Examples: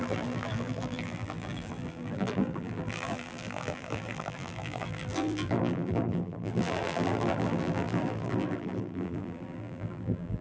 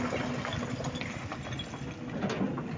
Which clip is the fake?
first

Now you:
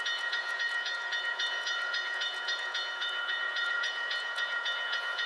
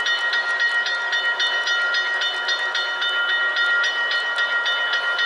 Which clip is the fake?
first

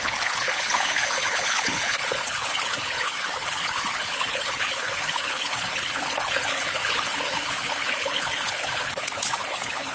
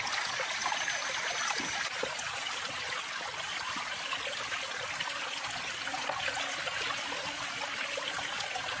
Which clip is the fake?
first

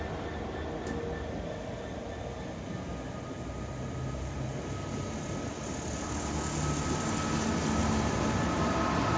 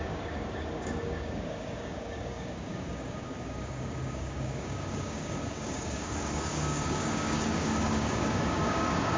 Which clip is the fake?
second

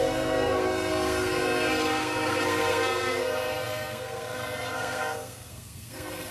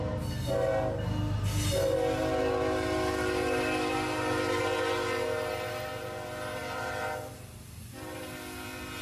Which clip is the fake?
first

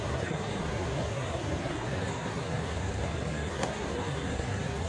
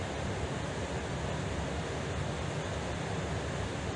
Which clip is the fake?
first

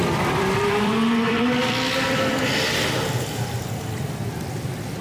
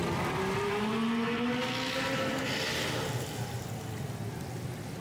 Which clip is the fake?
first